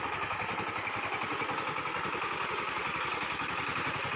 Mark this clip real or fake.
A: real